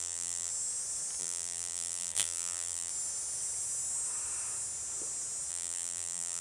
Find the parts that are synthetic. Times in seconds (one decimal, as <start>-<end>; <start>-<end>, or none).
0.0-0.5; 1.2-2.9; 5.5-6.4